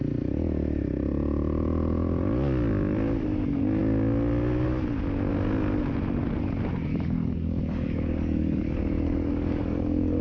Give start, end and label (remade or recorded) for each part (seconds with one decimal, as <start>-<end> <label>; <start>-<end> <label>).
0.0-6.9 recorded; 6.9-10.2 remade